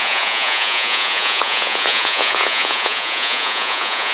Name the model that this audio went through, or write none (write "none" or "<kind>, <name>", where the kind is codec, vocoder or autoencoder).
vocoder, Vocos